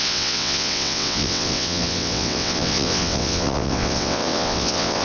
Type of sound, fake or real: fake